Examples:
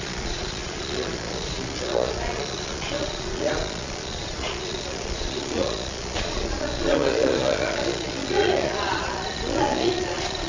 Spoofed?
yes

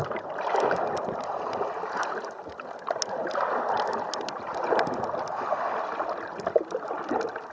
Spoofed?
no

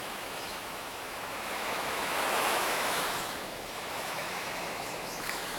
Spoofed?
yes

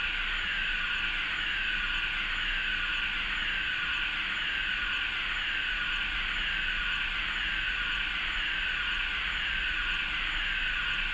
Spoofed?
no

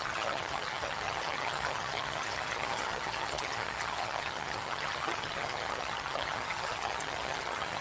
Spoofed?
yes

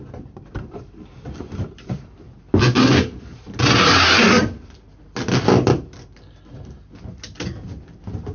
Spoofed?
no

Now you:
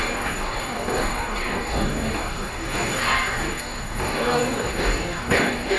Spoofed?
yes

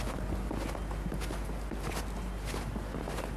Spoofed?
no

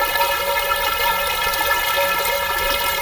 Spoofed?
no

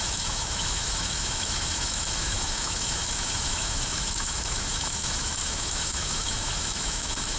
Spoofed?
yes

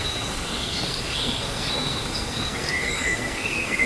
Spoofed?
yes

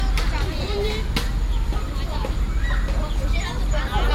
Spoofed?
no